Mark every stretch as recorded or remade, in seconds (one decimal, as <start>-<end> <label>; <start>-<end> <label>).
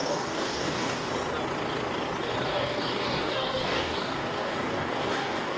0.0-1.1 remade; 1.1-2.5 recorded; 2.5-5.6 remade